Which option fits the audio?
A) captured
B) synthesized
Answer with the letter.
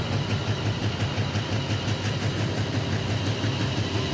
A